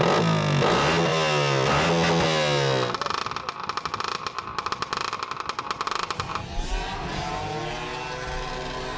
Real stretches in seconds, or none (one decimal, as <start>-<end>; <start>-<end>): 0.0-9.0

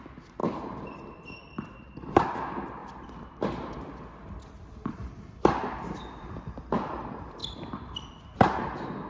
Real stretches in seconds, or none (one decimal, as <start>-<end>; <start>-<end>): 0.0-0.4; 1.8-2.8; 5.2-7.4; 8.1-9.1

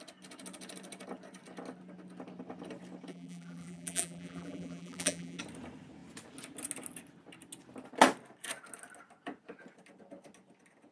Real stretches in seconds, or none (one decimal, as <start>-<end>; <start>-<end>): 0.0-3.1; 5.4-10.9

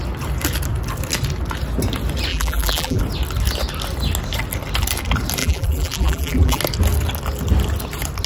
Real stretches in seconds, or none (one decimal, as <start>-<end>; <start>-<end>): 0.0-2.3; 3.0-5.4; 6.6-8.3

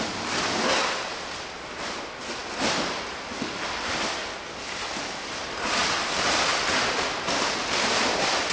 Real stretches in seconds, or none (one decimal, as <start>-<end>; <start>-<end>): 0.0-8.5

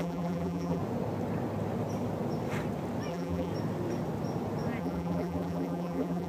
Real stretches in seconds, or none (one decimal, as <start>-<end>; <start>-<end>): 0.8-3.1; 3.5-4.8

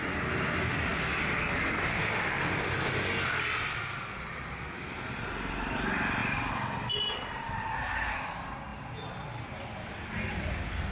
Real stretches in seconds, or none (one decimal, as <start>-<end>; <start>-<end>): 0.0-10.9

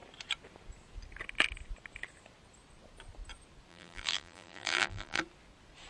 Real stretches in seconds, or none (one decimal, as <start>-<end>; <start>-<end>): 0.0-3.7; 5.2-5.9